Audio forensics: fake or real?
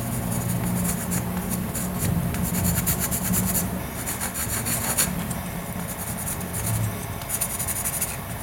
real